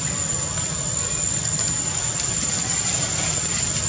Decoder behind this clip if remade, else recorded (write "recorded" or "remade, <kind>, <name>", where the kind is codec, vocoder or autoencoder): recorded